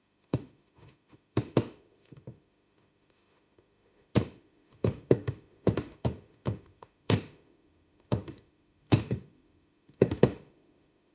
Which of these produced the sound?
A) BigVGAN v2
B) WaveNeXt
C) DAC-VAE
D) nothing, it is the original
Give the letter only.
C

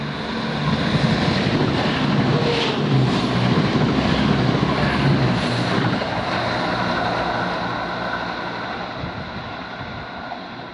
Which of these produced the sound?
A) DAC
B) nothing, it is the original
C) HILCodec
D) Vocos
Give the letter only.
B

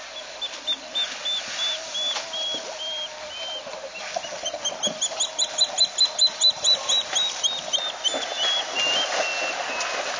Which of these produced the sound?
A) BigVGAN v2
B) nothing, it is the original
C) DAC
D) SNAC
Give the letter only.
B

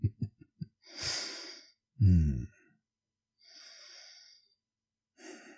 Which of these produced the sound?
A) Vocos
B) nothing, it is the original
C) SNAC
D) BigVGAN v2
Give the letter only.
B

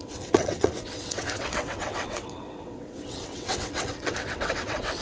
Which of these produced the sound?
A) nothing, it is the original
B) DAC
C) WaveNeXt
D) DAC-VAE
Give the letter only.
C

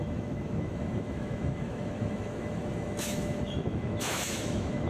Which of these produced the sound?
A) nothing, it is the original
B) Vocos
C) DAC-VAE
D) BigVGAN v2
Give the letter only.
C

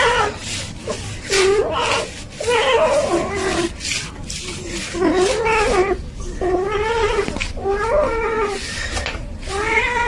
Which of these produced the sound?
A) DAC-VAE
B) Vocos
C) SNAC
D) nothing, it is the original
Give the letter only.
D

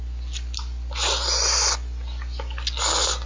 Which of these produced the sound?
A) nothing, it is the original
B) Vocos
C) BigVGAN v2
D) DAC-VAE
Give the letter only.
A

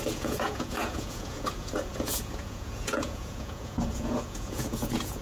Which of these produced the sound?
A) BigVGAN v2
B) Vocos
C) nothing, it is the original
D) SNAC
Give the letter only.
B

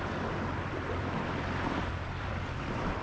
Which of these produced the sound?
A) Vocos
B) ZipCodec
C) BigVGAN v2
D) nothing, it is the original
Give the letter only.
C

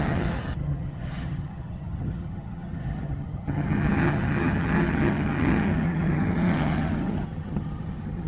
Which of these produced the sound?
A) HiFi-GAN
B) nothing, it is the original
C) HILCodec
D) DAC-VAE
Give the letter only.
A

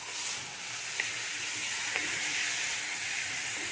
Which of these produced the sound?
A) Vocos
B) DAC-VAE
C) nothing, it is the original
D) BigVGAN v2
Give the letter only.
C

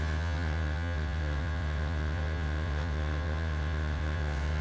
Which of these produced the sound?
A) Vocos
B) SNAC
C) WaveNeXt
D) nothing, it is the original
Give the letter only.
C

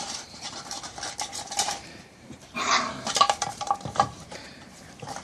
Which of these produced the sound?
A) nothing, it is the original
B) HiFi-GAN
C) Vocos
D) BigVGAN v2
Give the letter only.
D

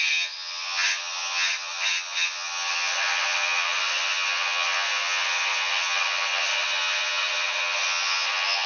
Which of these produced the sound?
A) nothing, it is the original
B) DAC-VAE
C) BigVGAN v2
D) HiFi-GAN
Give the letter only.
D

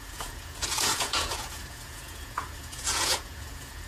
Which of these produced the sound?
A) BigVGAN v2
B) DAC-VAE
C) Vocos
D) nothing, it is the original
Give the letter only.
C